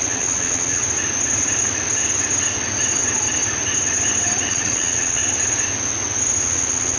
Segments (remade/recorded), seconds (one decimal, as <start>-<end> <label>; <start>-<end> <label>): 0.0-0.8 remade; 0.8-4.5 recorded; 4.5-5.2 remade; 5.2-6.4 recorded; 6.4-7.0 remade